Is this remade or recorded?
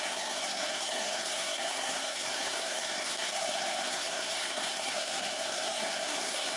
remade